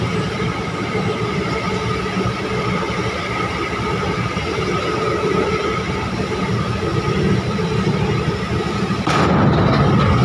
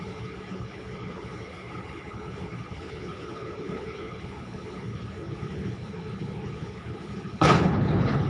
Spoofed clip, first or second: second